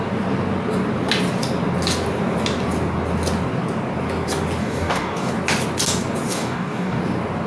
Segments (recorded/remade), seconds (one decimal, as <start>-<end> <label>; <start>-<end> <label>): 0.0-4.6 recorded; 4.6-5.3 remade; 5.3-6.3 recorded; 6.3-7.0 remade; 7.0-7.5 recorded

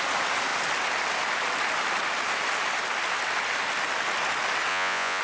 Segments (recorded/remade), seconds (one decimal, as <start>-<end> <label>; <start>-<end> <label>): 0.0-4.7 recorded; 4.7-5.2 remade

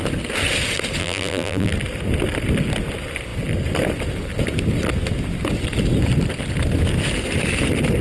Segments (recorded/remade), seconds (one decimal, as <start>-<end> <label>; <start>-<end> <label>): 0.0-1.0 recorded; 1.0-1.7 remade; 1.7-8.0 recorded

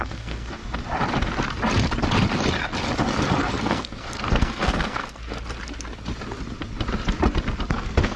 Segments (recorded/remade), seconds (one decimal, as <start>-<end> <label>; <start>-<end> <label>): 0.0-0.6 remade; 0.6-3.6 recorded; 3.6-5.2 remade; 5.2-7.7 recorded; 7.7-8.2 remade

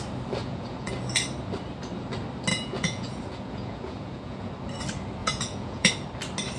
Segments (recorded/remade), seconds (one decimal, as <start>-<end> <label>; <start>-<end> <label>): 0.0-0.4 recorded; 0.4-0.9 remade; 0.9-2.5 recorded; 2.5-4.5 remade; 4.5-5.2 recorded; 5.2-5.9 remade; 5.9-6.6 recorded

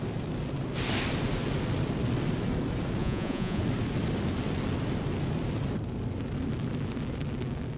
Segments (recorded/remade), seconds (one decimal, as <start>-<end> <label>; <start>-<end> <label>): 0.0-3.0 recorded; 3.0-3.6 remade; 3.6-7.8 recorded